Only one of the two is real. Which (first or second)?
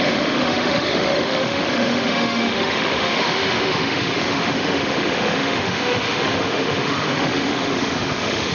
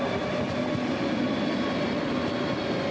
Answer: second